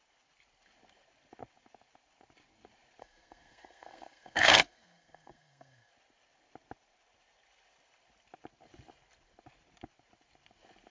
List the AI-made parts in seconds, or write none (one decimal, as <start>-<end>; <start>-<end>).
3.0-5.9